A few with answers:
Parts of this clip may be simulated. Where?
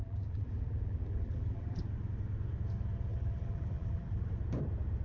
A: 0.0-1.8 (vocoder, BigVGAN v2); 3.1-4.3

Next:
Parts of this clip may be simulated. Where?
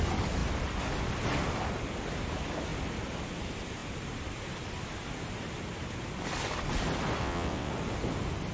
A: 7.2-7.7 (vocoder, WaveNeXt)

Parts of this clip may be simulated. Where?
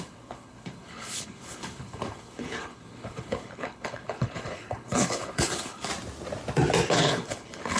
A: 0.0-5.9 (codec, HILCodec); 6.9-7.8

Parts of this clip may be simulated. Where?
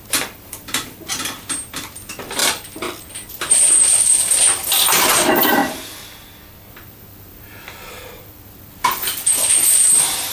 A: 0.0-1.2 (vocoder, BigVGAN v2); 1.7-5.6; 6.7-10.3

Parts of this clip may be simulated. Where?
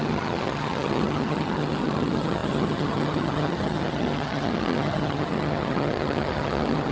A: 0.0-6.9 (vocoder, HiFi-GAN)